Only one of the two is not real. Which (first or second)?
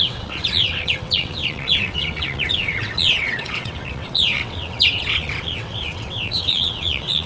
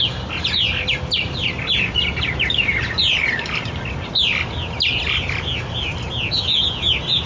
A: first